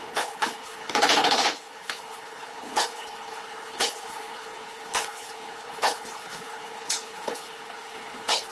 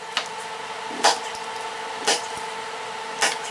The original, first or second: second